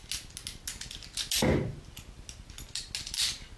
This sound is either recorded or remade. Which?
recorded